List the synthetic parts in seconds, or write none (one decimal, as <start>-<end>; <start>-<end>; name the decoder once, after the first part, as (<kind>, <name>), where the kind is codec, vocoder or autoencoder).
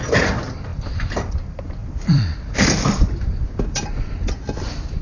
0.7-1.4 (vocoder, BigVGAN v2); 1.8-4.2